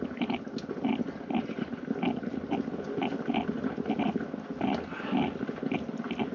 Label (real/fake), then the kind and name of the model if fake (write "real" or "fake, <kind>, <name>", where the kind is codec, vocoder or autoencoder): real